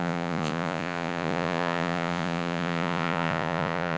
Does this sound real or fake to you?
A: fake